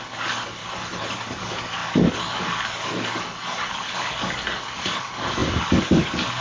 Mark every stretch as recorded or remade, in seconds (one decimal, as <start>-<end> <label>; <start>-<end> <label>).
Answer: 0.0-0.6 remade; 0.6-1.1 recorded; 1.1-6.4 remade